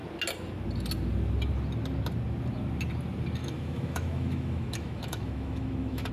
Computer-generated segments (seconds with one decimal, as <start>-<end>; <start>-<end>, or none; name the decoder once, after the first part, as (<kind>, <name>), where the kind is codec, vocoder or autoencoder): 3.4-6.1 (autoencoder, DAC-VAE)